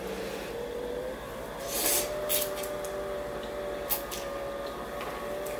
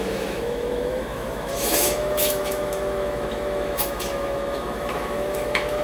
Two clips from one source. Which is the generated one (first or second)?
second